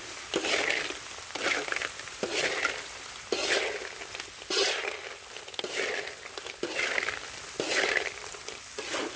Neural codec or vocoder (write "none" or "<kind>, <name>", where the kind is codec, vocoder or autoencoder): none